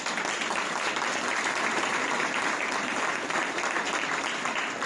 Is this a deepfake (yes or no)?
yes